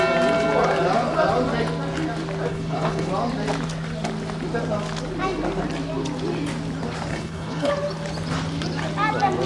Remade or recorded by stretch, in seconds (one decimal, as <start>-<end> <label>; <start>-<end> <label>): 0.0-2.5 recorded; 2.5-3.1 remade; 3.1-7.1 recorded; 7.1-7.7 remade; 7.7-9.5 recorded